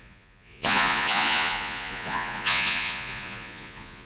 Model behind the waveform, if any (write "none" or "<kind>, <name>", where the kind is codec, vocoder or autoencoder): vocoder, Vocos